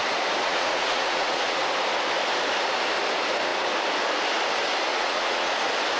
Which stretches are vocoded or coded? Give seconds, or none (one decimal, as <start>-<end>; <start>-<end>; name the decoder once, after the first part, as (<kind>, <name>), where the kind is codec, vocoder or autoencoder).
0.4-1.6 (vocoder, Vocos); 4.9-5.5